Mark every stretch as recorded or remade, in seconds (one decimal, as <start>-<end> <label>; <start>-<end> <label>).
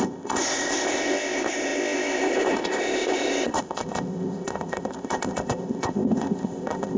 0.0-7.0 remade